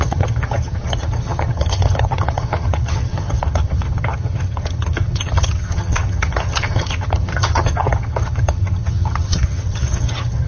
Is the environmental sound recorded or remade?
remade